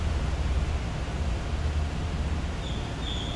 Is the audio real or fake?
real